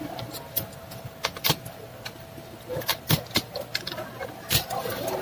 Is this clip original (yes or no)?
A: yes